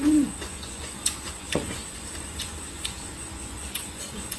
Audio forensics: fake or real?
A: fake